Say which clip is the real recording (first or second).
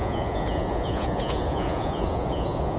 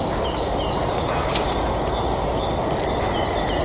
second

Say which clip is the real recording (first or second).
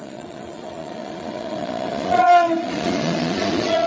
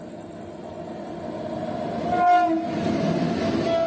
second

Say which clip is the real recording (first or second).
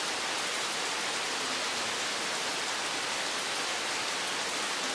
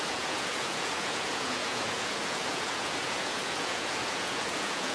first